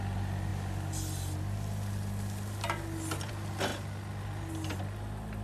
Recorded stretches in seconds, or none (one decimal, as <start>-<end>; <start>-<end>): 0.0-5.4